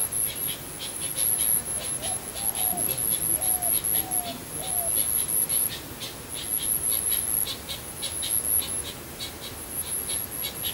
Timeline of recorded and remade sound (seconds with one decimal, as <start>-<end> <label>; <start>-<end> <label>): 0.0-10.7 recorded